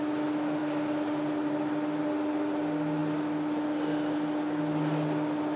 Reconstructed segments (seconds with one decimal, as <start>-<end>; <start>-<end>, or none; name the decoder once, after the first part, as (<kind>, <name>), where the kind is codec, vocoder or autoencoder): none